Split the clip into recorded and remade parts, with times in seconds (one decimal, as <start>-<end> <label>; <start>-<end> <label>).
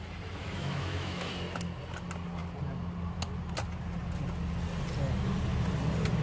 0.0-0.4 recorded; 0.4-1.3 remade; 1.3-6.2 recorded